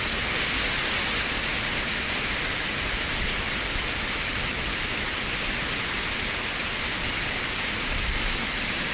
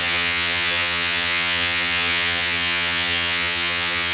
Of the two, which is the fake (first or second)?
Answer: second